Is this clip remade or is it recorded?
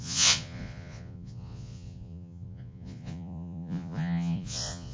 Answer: remade